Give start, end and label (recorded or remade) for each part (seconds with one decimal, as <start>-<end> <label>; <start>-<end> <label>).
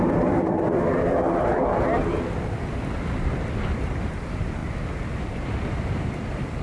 0.0-1.5 remade; 1.5-3.7 recorded; 3.7-6.6 remade